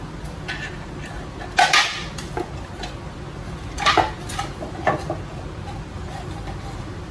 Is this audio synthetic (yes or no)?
no